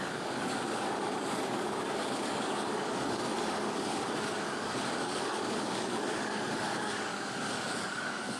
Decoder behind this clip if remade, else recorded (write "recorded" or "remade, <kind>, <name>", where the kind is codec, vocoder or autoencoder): remade, codec, DAC